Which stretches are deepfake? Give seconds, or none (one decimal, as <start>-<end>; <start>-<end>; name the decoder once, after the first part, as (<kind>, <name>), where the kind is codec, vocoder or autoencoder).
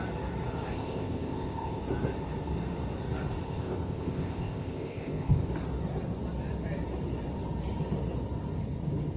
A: 0.7-1.8 (codec, ZipCodec); 3.4-5.5